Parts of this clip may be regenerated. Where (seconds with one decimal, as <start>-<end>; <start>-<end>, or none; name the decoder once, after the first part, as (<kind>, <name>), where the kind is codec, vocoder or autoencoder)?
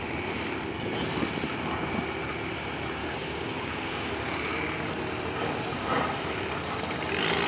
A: 3.0-4.5 (codec, DAC)